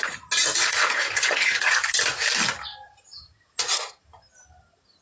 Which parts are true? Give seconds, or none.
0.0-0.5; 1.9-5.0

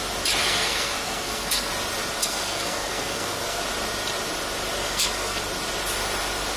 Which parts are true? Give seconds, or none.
0.0-0.4; 1.7-2.2; 3.6-4.8; 5.4-6.6

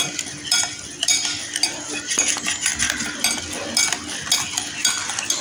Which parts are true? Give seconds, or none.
0.0-5.4

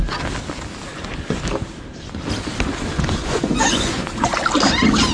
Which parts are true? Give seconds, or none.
0.0-0.9; 1.4-2.9; 4.4-5.1

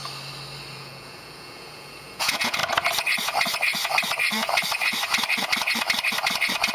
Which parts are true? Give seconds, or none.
0.0-0.7; 2.6-6.7

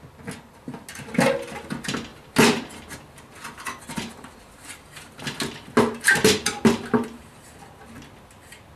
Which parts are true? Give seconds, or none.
0.0-8.8

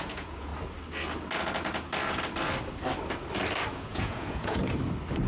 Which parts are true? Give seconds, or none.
0.5-3.7; 4.6-5.3

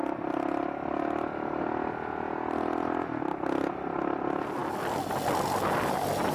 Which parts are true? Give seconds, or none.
0.0-6.3